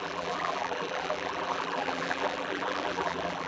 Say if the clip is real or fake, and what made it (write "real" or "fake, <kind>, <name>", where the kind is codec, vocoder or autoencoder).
fake, vocoder, BigVGAN v2